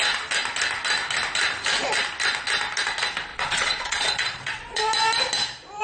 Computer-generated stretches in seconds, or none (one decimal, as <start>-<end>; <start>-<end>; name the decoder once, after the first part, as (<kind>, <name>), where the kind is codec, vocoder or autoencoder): 3.3-4.8 (vocoder, Vocos)